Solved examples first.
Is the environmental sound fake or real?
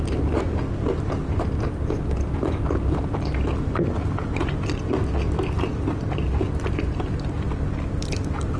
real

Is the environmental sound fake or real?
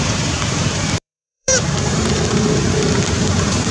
fake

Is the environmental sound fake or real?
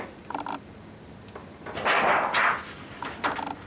real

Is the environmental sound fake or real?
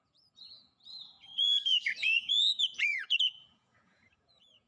fake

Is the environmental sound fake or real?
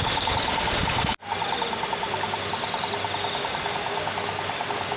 real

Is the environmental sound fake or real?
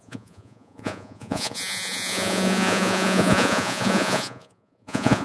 fake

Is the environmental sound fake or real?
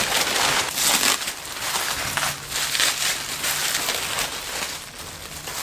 real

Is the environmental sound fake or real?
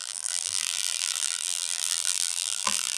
fake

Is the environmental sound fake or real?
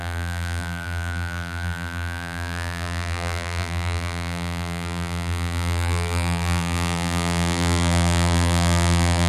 fake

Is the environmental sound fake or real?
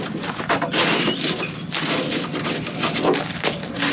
real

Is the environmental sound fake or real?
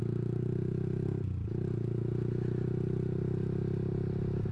real